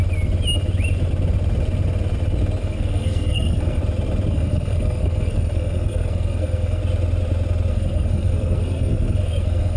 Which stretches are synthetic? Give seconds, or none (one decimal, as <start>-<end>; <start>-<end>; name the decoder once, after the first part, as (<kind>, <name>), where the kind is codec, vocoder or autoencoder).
2.6-3.8 (codec, SNAC); 4.3-6.8; 7.7-9.8